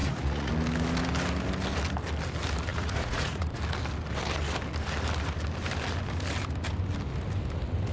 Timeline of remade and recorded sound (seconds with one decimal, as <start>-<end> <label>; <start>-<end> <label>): 0.0-0.5 remade; 0.5-2.7 recorded; 2.7-3.6 remade; 3.6-7.9 recorded